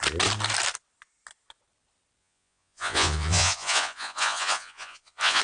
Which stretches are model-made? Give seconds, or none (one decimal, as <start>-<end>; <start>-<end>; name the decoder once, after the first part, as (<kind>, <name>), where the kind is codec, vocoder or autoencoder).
2.2-5.4 (vocoder, Vocos)